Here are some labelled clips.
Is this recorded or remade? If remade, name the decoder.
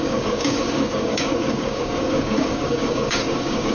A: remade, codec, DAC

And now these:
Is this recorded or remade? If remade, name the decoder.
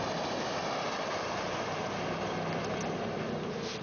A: recorded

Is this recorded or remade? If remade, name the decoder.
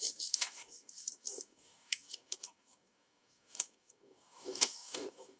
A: remade, codec, DAC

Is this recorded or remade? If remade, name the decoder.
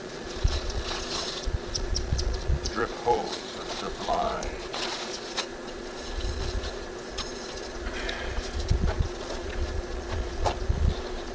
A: remade, vocoder, Vocos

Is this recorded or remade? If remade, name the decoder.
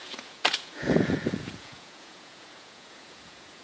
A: remade, vocoder, Vocos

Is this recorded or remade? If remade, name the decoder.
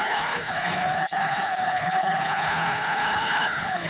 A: remade, codec, HILCodec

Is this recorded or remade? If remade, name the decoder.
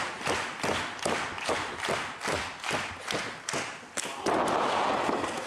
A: recorded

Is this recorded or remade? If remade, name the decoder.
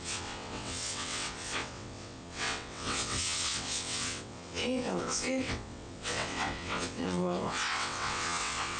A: remade, vocoder, WaveNeXt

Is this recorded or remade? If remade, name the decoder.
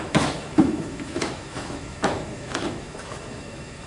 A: remade, autoencoder, DAC-VAE